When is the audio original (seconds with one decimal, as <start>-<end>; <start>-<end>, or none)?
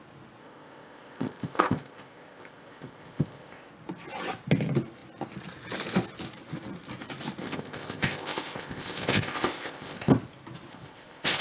0.0-0.4; 3.7-7.4; 10.1-10.7